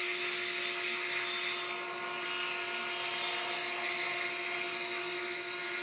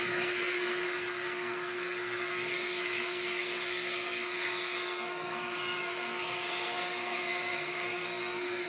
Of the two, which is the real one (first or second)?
first